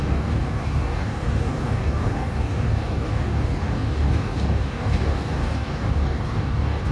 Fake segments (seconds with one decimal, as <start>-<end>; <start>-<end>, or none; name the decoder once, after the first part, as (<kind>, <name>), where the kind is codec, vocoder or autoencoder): 0.0-6.9 (codec, DAC)